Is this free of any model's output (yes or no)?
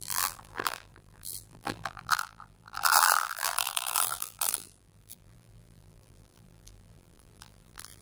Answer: no